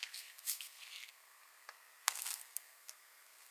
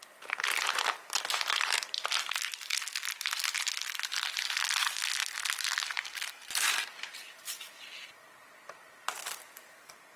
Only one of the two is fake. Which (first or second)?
first